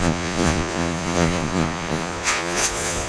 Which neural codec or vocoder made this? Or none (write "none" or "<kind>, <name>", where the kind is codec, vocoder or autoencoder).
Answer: vocoder, Vocos